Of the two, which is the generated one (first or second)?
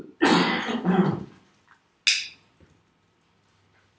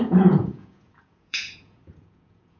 second